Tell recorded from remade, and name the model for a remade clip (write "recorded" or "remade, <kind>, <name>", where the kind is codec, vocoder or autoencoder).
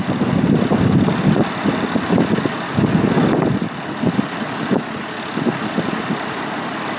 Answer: recorded